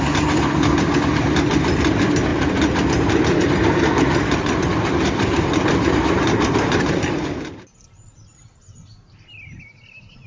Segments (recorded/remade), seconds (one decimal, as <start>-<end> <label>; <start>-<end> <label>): 0.0-2.3 recorded; 2.3-6.7 remade; 6.7-10.3 recorded